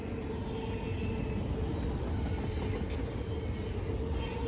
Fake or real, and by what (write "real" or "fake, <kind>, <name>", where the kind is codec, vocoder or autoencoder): real